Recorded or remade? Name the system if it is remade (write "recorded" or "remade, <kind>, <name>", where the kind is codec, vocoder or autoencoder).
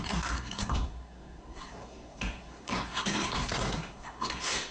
remade, codec, SNAC